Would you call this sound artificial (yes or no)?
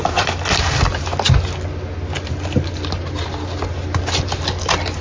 no